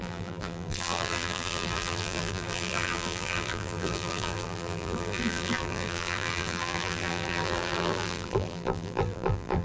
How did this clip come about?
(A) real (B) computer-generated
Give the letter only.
B